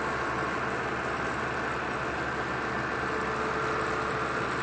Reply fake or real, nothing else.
real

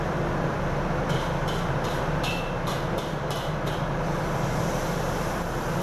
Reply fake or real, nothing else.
fake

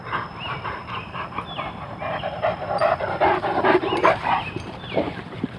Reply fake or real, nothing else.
fake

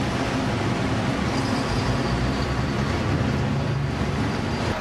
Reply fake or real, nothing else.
fake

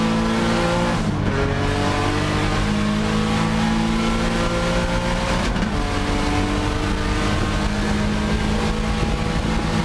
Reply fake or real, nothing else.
real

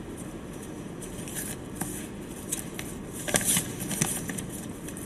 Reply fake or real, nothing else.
real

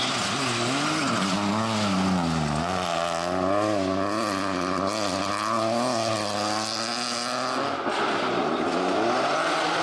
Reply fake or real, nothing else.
real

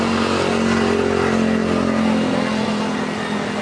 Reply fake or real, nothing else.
real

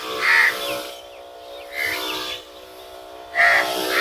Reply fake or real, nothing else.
fake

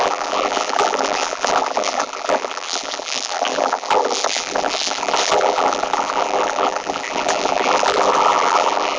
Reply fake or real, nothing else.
fake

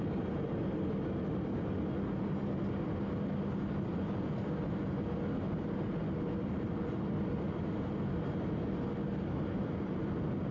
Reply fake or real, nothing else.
real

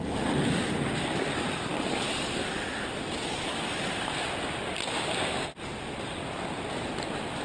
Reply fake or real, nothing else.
real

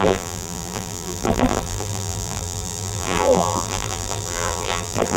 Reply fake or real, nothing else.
fake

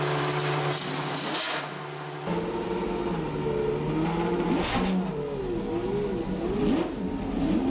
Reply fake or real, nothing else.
real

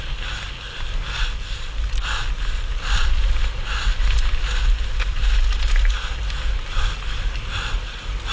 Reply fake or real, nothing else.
real